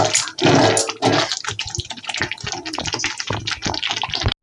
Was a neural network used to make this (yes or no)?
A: no